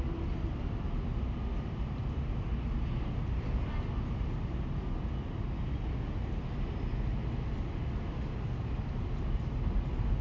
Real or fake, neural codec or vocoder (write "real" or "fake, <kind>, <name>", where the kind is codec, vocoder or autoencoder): real